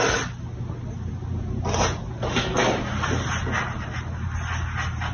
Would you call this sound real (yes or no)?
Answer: yes